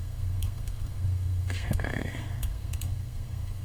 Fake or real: fake